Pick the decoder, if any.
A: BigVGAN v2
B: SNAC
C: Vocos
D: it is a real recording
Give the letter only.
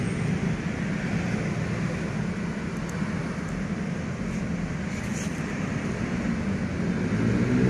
D